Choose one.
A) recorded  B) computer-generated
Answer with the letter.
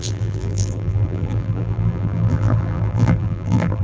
B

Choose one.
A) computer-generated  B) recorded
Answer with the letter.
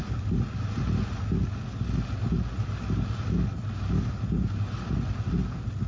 B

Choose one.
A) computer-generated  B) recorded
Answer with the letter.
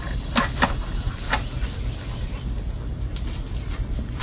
B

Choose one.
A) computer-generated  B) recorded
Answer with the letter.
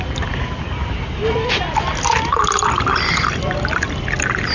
B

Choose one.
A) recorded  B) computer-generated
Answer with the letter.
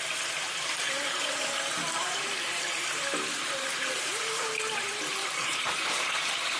B